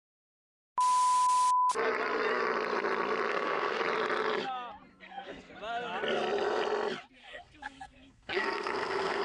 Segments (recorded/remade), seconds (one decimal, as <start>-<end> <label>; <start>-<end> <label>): 0.0-3.3 recorded; 3.3-3.8 remade; 3.8-4.9 recorded; 4.9-5.5 remade; 5.5-7.2 recorded; 7.2-9.2 remade